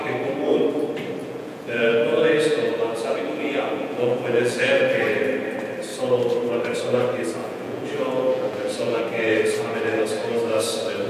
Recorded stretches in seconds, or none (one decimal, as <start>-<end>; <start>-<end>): 0.0-1.2; 4.8-7.4; 9.0-11.1